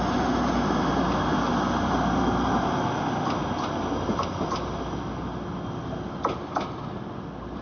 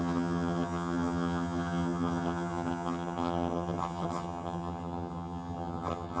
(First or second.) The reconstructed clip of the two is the second